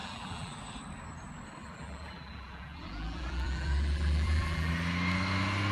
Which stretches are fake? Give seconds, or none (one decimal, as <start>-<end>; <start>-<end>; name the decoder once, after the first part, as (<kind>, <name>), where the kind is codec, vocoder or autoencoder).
0.0-0.6 (vocoder, BigVGAN v2); 1.6-4.7